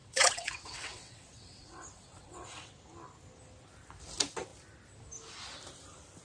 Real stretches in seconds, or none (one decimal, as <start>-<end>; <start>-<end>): 2.8-6.2